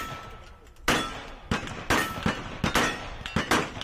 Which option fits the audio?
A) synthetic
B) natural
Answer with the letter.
B